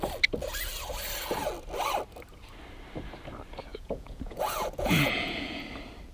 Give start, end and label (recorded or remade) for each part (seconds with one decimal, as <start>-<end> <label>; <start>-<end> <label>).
0.0-3.7 recorded; 3.7-5.6 remade; 5.6-6.1 recorded

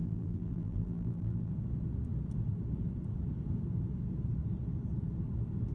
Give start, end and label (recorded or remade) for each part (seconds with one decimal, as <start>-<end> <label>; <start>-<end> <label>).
0.0-1.5 remade; 1.5-5.7 recorded

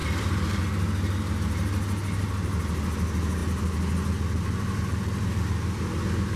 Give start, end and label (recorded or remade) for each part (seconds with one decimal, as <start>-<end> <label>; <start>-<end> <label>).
0.0-0.6 remade; 0.6-6.4 recorded

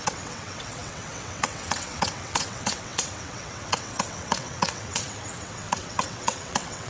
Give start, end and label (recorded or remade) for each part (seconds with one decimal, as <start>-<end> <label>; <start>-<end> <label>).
0.0-6.9 remade

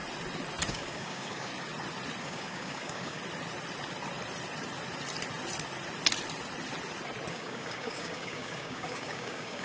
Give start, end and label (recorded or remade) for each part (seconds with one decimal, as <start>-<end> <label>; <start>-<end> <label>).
0.0-0.7 recorded; 0.7-1.5 remade; 1.5-2.2 recorded; 2.2-3.2 remade; 3.2-7.3 recorded; 7.3-9.6 remade

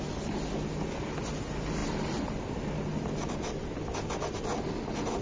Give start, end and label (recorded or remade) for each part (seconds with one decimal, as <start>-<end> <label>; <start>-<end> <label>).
0.0-5.2 recorded

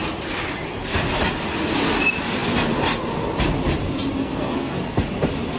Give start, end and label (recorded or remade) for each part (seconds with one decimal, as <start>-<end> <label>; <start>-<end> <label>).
0.0-4.2 recorded; 4.2-5.0 remade; 5.0-5.6 recorded